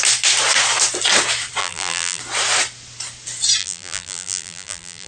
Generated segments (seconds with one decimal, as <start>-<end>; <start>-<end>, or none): 1.6-2.2; 3.6-5.1